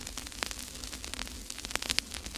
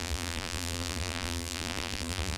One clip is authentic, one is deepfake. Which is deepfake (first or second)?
second